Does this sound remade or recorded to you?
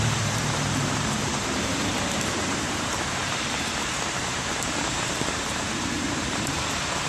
remade